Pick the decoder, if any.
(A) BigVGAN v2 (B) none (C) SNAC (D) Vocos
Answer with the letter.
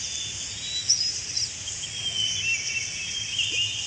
B